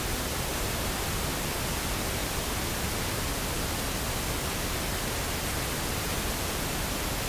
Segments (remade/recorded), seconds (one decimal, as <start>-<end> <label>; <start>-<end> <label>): 0.0-0.5 recorded; 0.5-1.1 remade; 1.1-7.3 recorded